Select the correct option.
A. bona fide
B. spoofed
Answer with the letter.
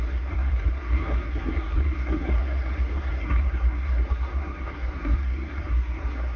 B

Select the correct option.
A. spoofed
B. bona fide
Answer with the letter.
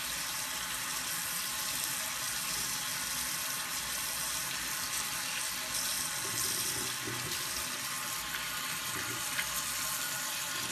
B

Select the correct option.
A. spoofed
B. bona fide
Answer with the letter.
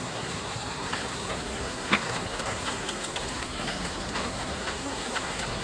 A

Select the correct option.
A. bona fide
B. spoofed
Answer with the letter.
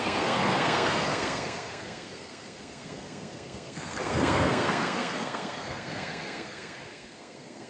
B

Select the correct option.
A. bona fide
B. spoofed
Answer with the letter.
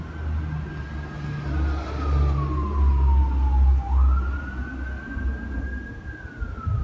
A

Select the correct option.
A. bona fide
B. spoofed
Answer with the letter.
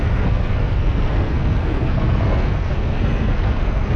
B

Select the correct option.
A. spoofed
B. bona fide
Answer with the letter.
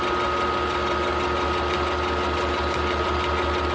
B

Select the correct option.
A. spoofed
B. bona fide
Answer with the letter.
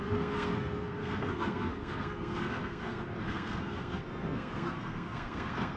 A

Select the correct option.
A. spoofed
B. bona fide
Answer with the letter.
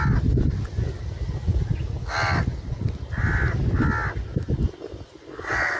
B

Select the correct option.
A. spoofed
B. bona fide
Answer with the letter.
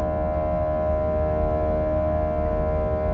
B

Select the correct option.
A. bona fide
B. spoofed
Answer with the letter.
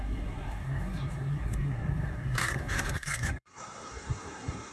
B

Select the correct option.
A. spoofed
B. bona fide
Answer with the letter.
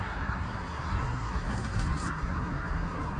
A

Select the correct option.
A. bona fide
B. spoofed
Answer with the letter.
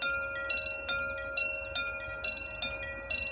A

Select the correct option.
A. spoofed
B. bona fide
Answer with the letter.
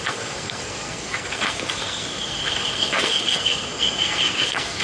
A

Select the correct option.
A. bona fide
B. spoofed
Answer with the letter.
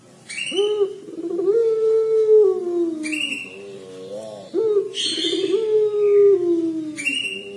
A